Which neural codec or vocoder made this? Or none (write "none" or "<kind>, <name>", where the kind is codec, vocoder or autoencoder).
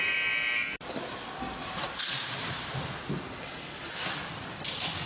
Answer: none